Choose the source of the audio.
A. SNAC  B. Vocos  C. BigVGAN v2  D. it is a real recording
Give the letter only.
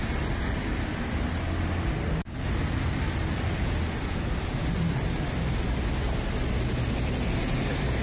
D